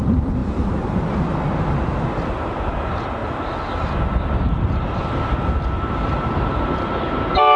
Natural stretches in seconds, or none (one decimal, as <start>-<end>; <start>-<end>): 1.9-2.7; 3.2-7.6